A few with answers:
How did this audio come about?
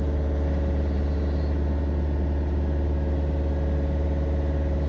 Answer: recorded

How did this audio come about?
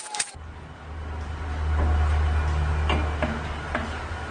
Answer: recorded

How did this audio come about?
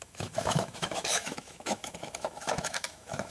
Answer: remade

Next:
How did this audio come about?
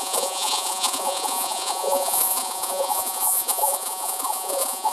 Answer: remade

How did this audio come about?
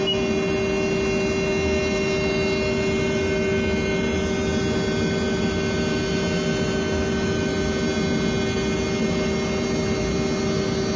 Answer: recorded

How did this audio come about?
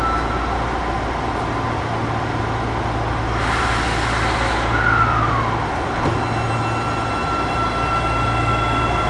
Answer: recorded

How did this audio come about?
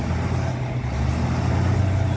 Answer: recorded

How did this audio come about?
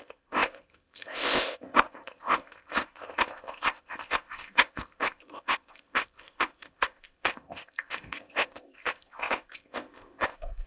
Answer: remade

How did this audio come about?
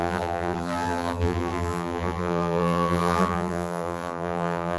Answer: remade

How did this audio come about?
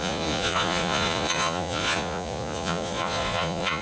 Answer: remade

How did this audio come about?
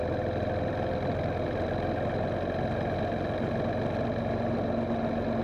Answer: recorded